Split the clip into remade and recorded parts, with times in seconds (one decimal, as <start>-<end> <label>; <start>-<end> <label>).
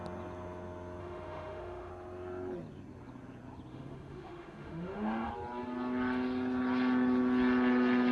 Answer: 0.0-1.0 recorded; 1.0-1.9 remade; 1.9-3.7 recorded; 3.7-5.3 remade; 5.3-8.1 recorded